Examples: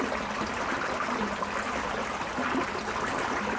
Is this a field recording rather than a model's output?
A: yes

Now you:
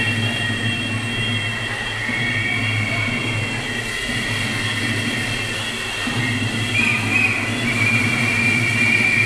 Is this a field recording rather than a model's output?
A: yes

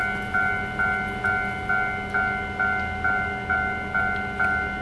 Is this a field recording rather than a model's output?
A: yes